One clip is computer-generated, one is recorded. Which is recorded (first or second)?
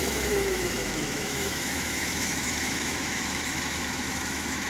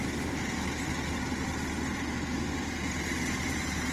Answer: second